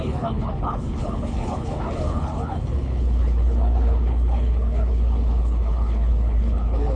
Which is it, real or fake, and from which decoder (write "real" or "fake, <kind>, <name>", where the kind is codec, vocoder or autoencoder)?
fake, codec, HILCodec